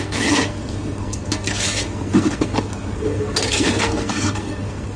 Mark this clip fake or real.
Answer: fake